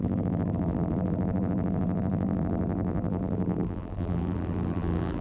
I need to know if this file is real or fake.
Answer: fake